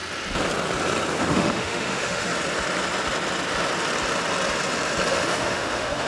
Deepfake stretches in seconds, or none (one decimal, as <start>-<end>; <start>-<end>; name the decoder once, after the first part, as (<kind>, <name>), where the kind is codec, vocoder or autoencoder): 1.2-2.3 (autoencoder, DAC-VAE); 5.1-6.1